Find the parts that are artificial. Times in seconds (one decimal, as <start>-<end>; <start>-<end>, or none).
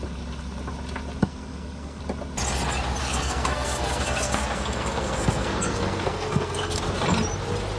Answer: 1.2-2.0; 3.0-6.8